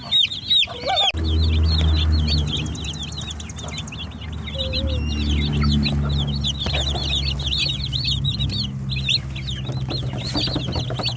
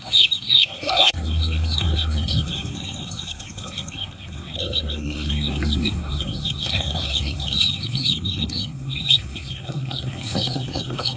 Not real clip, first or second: second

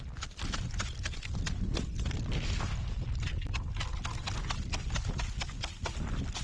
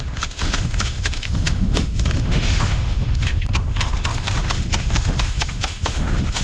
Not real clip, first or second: second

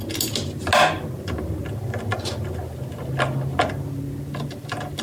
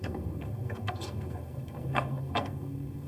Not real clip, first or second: second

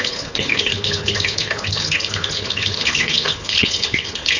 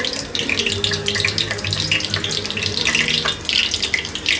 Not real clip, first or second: first